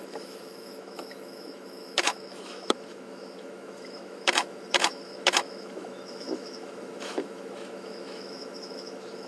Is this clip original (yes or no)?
no